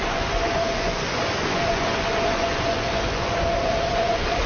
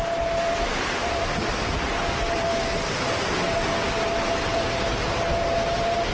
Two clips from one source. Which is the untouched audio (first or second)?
second